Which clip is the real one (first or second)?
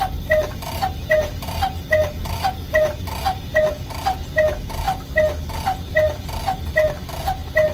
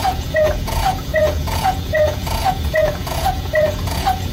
first